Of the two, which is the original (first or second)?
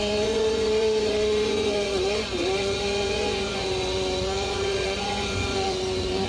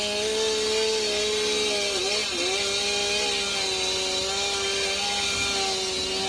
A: second